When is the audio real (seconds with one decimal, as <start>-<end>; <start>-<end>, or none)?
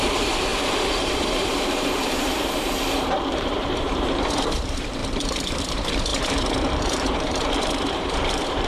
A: none